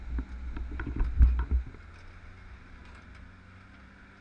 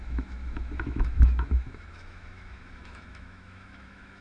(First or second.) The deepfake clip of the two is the second